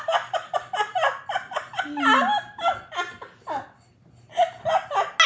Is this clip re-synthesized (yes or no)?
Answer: no